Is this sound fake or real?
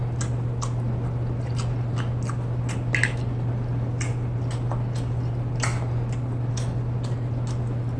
real